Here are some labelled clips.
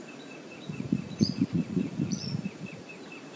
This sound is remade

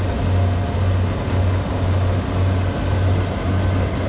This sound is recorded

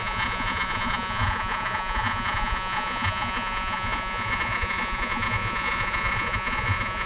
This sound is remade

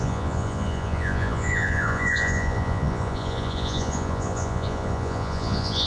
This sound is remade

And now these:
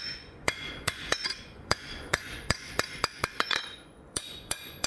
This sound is remade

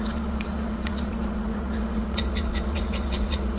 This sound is remade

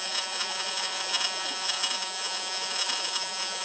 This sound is remade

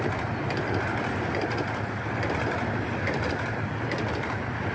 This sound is recorded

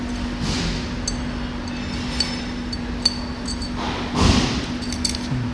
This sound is recorded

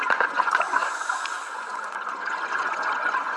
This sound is remade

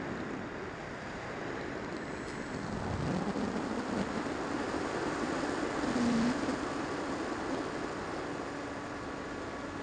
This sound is recorded